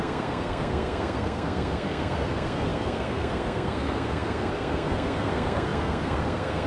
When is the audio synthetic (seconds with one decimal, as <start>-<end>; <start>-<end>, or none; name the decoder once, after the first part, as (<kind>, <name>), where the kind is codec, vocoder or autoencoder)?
0.0-6.7 (codec, SNAC)